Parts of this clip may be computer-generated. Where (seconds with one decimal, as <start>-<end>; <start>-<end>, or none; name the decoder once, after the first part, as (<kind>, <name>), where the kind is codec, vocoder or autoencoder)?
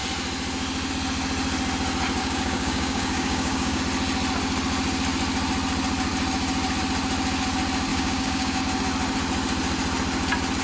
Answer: 2.2-3.8 (codec, DAC); 7.9-8.6